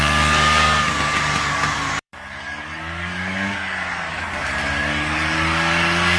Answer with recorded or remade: remade